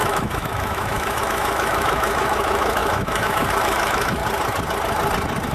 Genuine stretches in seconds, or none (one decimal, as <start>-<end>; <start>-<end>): 4.2-5.5